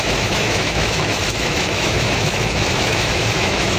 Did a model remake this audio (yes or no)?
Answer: yes